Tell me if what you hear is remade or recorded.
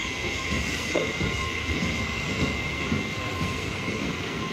remade